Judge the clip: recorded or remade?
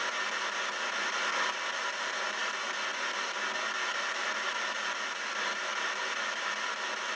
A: recorded